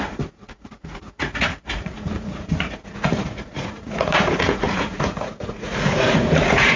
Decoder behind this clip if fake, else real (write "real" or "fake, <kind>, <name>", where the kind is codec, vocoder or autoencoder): fake, vocoder, Vocos